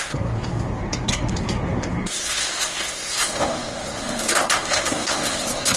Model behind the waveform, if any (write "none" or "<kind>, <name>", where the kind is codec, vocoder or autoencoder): codec, SNAC